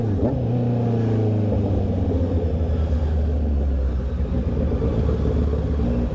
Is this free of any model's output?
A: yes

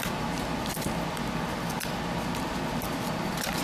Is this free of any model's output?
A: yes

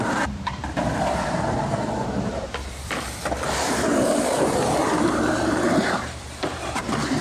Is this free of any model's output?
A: no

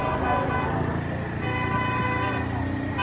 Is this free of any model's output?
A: yes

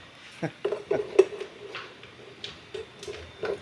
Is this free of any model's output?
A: yes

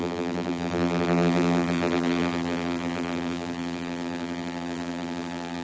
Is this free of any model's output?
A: no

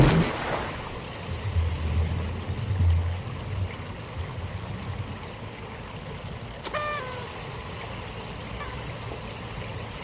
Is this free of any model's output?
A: yes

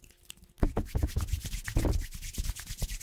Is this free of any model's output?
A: yes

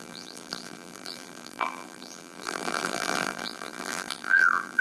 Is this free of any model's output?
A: no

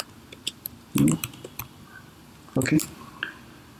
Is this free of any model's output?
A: no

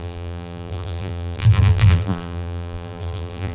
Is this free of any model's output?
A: no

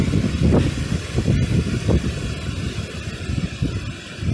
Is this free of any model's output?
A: yes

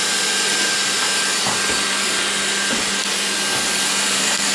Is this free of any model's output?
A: yes